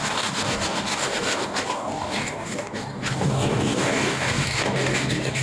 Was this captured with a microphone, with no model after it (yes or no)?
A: no